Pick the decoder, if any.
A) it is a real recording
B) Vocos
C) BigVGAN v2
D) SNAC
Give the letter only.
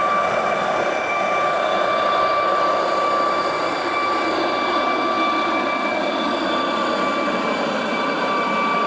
A